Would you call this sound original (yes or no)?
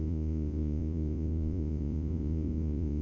no